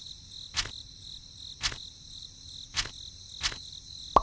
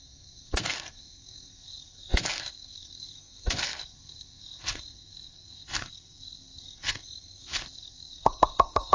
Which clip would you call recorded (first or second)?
first